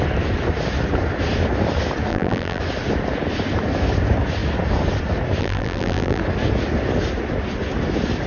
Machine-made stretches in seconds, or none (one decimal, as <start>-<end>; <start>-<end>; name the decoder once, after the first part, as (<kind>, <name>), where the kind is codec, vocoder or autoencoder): 2.1-2.6 (vocoder, BigVGAN v2); 5.4-6.2